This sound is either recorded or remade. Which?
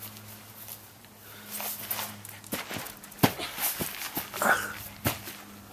recorded